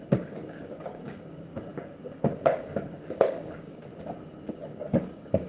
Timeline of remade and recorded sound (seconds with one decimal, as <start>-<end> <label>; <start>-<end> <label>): 0.0-3.9 remade; 3.9-4.5 recorded; 4.5-5.5 remade